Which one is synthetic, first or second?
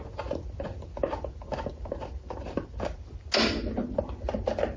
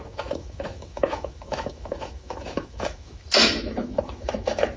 second